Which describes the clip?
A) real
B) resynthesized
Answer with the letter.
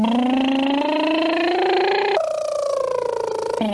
A